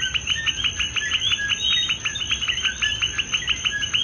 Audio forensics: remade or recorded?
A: recorded